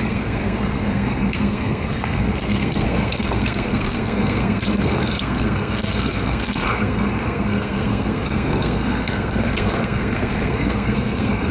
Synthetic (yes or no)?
yes